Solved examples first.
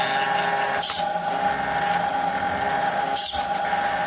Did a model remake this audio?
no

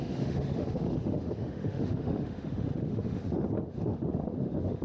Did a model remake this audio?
yes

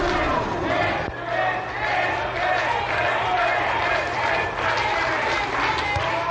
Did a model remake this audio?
no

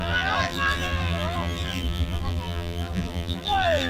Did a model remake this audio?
yes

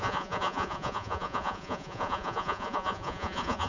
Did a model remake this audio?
yes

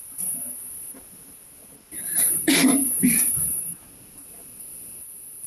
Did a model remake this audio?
no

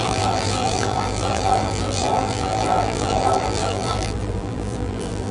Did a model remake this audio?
yes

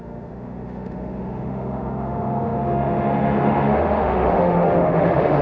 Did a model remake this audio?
yes